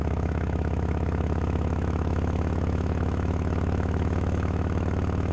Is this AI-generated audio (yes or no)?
yes